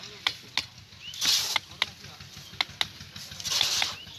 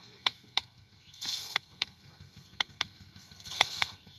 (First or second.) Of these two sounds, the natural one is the first